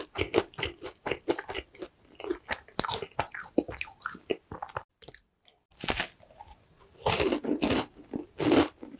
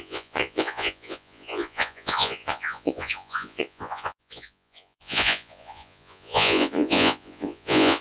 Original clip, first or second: first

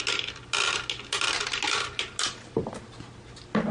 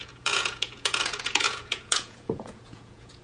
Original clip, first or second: first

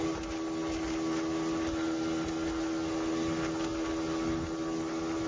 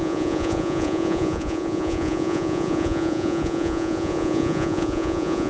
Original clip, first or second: first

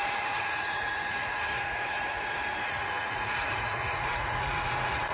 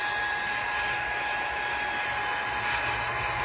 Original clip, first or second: second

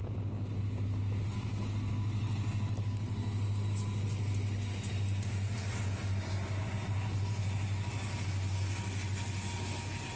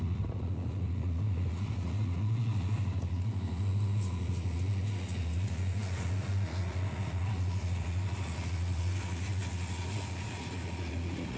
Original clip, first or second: first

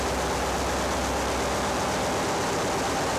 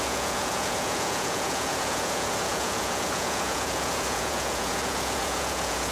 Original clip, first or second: first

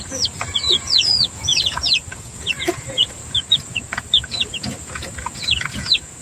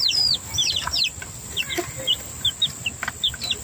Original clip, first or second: second